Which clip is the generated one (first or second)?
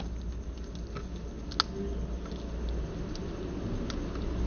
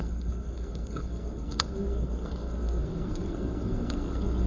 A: second